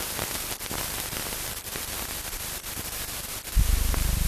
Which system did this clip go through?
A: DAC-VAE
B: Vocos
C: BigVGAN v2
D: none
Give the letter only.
C